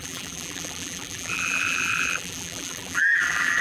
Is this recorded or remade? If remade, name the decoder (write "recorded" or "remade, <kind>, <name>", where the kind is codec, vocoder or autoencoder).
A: remade, vocoder, BigVGAN v2